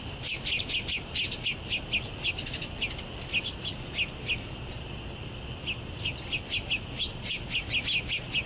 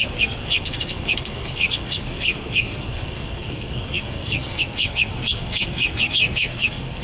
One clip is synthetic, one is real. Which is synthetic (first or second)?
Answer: second